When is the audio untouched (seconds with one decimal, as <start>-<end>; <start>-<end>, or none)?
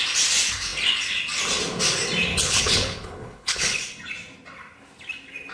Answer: 0.0-2.3; 3.8-5.5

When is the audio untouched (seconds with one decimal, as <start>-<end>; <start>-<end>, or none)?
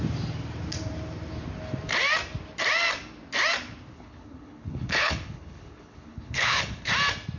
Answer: 0.0-3.9; 6.9-7.4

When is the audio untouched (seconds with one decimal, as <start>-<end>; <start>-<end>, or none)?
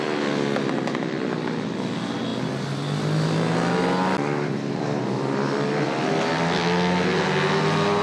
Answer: 0.0-8.0